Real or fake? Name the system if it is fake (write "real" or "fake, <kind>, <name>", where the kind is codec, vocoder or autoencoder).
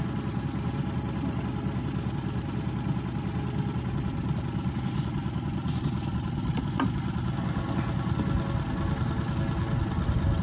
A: real